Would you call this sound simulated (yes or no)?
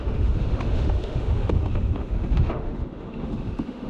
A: yes